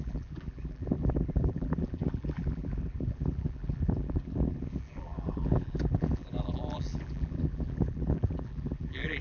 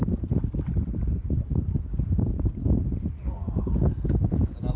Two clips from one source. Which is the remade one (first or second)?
first